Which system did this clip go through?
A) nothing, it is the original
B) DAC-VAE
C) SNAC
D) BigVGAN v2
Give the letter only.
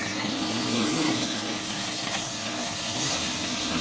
C